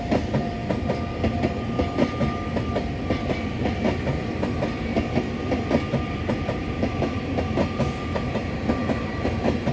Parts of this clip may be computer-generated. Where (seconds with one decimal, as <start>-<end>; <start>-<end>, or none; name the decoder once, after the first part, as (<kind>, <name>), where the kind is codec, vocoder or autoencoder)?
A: none